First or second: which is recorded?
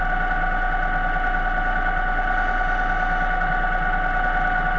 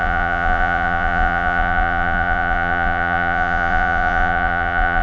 first